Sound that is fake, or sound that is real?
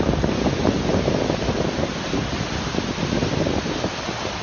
real